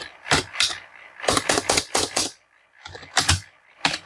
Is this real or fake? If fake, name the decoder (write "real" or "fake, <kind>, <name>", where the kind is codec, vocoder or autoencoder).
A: fake, vocoder, BigVGAN v2